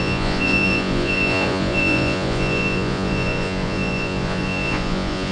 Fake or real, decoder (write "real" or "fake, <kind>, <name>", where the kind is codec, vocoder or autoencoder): fake, vocoder, Vocos